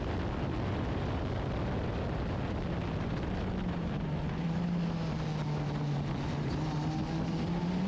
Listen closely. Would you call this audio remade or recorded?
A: recorded